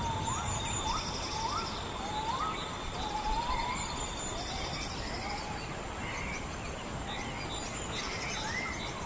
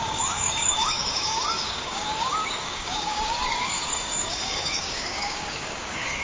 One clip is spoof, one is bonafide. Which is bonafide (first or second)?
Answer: first